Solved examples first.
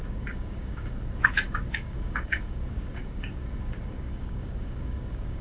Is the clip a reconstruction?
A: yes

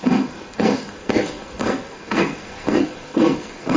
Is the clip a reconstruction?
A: yes